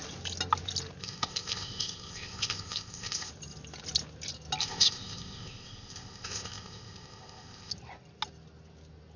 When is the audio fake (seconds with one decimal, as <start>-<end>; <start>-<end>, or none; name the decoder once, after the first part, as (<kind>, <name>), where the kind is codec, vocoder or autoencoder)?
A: 1.0-3.3 (codec, ZipCodec); 4.6-7.7